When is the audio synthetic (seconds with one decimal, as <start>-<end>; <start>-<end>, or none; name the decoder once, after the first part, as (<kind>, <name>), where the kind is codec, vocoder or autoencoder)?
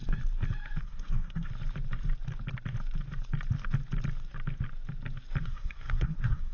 0.8-1.5 (codec, SNAC); 5.4-6.5